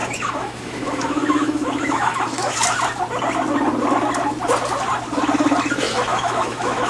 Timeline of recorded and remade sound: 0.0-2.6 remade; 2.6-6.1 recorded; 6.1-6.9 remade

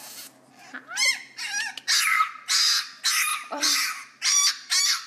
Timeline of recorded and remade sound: 0.0-3.3 recorded; 3.3-4.5 remade; 4.5-5.1 recorded

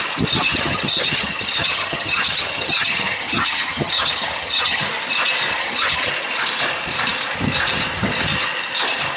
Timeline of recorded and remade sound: 0.0-0.5 recorded; 0.5-4.9 remade; 4.9-5.5 recorded; 5.5-6.1 remade; 6.1-9.2 recorded

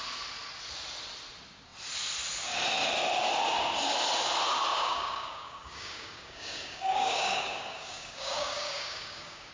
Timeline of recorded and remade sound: 0.0-4.7 recorded; 4.7-9.5 remade

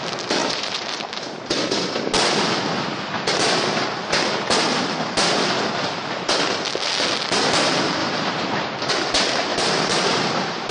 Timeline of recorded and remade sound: 0.0-0.4 recorded; 0.4-1.0 remade; 1.0-8.0 recorded; 8.0-8.9 remade; 8.9-9.5 recorded; 9.5-10.7 remade

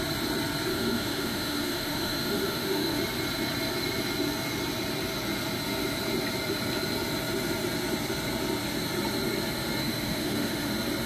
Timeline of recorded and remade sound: 0.0-0.7 recorded; 0.7-3.0 remade; 3.0-9.8 recorded; 9.8-10.7 remade; 10.7-11.1 recorded